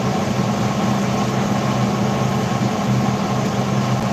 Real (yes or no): yes